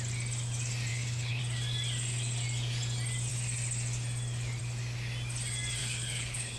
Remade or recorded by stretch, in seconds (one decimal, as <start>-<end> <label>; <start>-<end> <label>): 0.0-0.9 recorded; 0.9-1.4 remade; 1.4-5.8 recorded; 5.8-6.6 remade